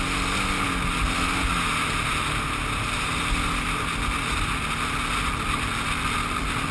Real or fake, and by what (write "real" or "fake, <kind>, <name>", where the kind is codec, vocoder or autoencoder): real